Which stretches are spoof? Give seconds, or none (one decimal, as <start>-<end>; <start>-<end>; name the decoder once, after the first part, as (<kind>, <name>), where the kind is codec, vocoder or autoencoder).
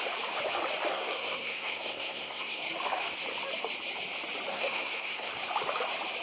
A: 0.9-2.6 (codec, SNAC); 4.5-5.3